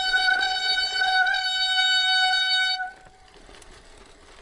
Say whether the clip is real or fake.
real